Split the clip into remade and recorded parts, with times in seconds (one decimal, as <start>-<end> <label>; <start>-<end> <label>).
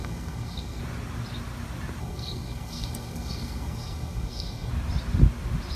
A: 0.0-0.8 remade; 0.8-2.0 recorded; 2.0-4.7 remade; 4.7-5.8 recorded